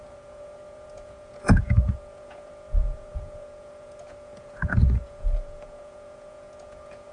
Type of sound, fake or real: fake